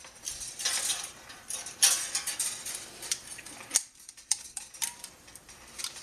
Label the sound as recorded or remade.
remade